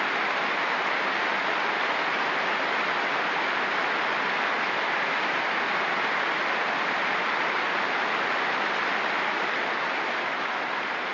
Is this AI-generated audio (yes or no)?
no